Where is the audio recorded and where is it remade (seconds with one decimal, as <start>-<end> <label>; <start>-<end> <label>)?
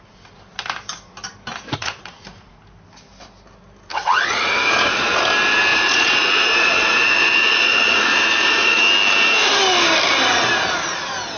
0.0-1.8 recorded; 1.8-2.6 remade; 2.6-3.9 recorded; 3.9-5.2 remade; 5.2-5.7 recorded; 5.7-8.8 remade; 8.8-11.4 recorded